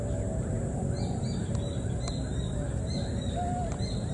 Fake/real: real